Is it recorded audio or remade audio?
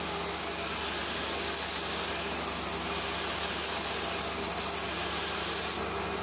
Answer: recorded